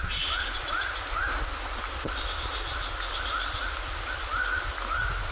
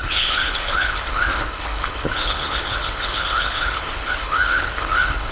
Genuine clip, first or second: first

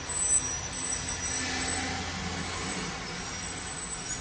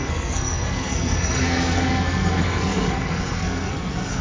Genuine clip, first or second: first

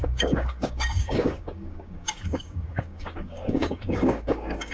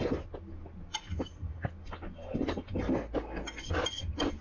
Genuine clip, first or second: second